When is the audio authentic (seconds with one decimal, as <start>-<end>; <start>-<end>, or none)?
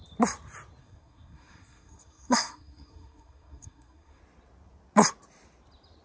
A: 0.0-0.8; 4.2-6.0